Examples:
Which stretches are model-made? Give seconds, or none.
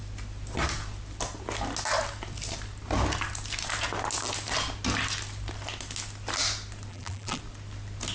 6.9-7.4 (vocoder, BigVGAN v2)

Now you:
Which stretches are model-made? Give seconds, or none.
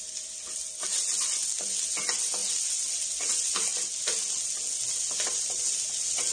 none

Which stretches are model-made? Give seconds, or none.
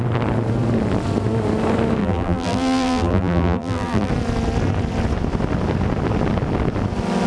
2.0-4.1 (vocoder, BigVGAN v2)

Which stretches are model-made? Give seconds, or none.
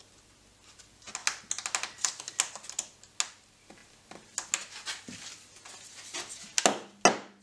none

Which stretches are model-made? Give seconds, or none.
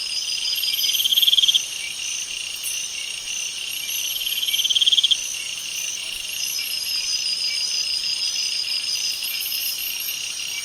1.1-1.8 (vocoder, BigVGAN v2); 5.9-7.4; 8.4-9.6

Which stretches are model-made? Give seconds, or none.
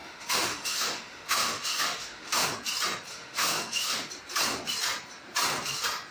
0.0-2.5 (autoencoder, DAC-VAE); 3.1-4.1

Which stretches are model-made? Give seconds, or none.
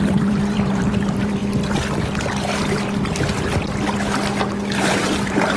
0.0-1.4 (vocoder, BigVGAN v2); 4.8-5.6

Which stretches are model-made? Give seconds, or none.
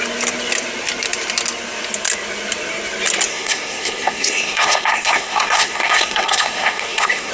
3.3-7.3 (codec, SNAC)